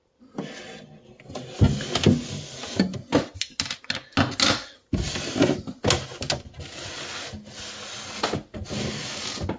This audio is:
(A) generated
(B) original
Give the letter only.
B